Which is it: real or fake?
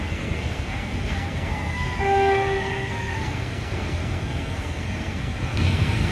fake